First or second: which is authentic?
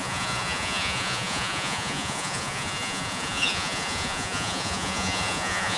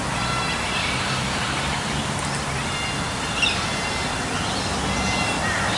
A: second